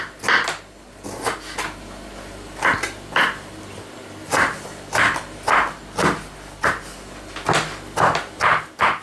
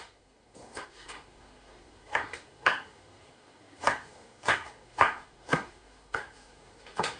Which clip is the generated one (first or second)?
second